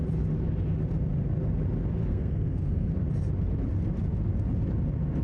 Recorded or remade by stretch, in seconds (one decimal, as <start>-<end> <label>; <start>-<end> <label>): 0.0-2.0 recorded; 2.0-2.9 remade; 2.9-5.2 recorded